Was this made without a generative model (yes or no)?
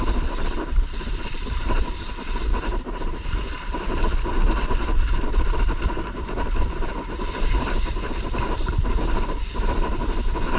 no